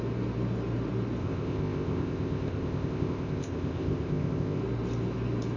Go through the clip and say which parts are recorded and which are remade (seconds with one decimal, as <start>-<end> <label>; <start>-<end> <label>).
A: 0.0-1.2 recorded; 1.2-4.6 remade; 4.6-5.6 recorded